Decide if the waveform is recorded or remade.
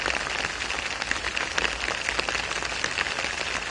recorded